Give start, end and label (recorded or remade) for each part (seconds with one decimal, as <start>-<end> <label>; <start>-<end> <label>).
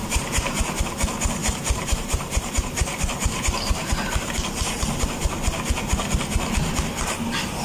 0.0-0.8 remade; 0.8-1.4 recorded; 1.4-5.0 remade; 5.0-7.6 recorded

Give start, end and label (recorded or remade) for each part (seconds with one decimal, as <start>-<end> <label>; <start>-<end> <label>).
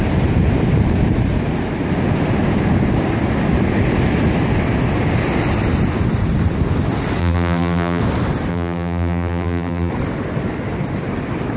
0.0-7.2 recorded; 7.2-8.0 remade; 8.0-8.5 recorded; 8.5-9.9 remade; 9.9-11.6 recorded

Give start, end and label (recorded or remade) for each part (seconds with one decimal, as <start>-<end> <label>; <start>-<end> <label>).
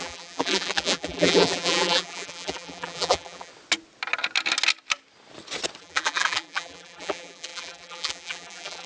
0.0-3.5 remade; 3.5-5.8 recorded; 5.8-8.9 remade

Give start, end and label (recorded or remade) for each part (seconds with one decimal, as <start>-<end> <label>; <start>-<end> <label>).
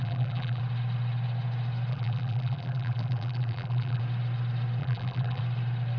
0.0-0.6 remade; 0.6-1.9 recorded; 1.9-4.0 remade; 4.0-4.8 recorded; 4.8-5.4 remade; 5.4-6.0 recorded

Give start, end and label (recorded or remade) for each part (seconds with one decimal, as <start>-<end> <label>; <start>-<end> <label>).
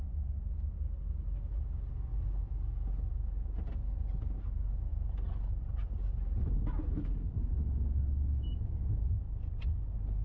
0.0-4.9 recorded; 4.9-7.8 remade; 7.8-10.2 recorded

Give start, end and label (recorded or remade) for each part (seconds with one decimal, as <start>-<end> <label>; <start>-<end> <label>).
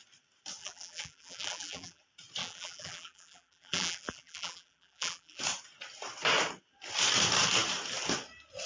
0.0-0.6 recorded; 0.6-2.0 remade; 2.0-2.4 recorded; 2.4-5.4 remade; 5.4-8.7 recorded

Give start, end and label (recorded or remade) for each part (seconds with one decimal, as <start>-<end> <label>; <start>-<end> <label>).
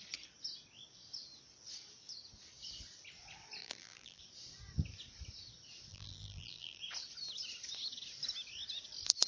0.0-3.6 recorded; 3.6-4.2 remade; 4.2-5.9 recorded; 5.9-6.8 remade; 6.8-9.3 recorded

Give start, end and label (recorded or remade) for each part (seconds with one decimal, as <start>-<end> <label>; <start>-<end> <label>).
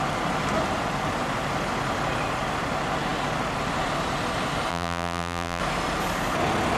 0.0-4.7 recorded; 4.7-5.6 remade; 5.6-6.8 recorded